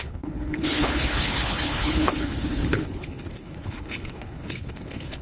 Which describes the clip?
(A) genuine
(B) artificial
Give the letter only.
B